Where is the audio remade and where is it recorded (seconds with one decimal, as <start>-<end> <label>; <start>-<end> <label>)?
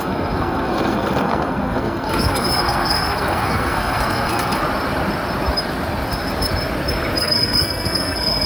0.0-4.6 remade; 4.6-7.2 recorded; 7.2-8.5 remade